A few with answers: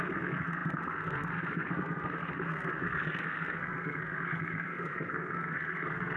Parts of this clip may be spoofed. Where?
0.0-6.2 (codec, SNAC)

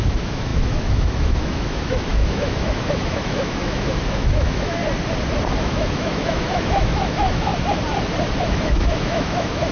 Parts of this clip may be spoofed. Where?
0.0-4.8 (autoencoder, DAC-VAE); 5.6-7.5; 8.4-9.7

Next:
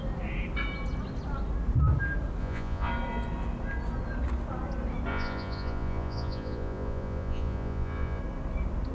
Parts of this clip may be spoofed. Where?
2.4-2.9 (vocoder, Vocos); 5.1-8.2

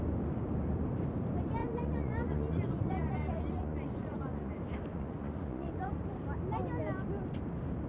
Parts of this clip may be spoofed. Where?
1.6-4.5 (vocoder, Vocos); 4.9-6.0

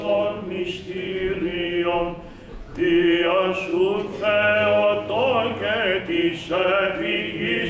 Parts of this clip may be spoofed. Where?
0.0-3.7 (vocoder, Vocos); 6.0-7.7

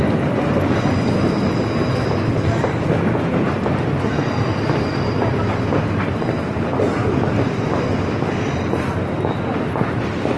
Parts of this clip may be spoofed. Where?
4.5-7.2 (vocoder, BigVGAN v2)

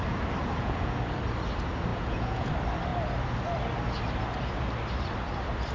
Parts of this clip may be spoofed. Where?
0.4-1.0 (vocoder, Vocos); 1.9-2.5